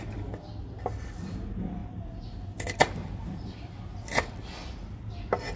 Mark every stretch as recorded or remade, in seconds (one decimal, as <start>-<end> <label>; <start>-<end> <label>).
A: 0.0-5.6 recorded